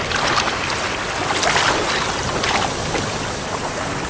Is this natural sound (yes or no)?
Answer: yes